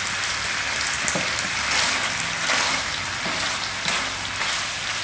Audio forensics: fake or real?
real